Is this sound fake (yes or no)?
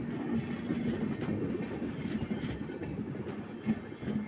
no